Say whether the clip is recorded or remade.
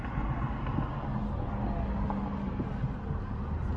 recorded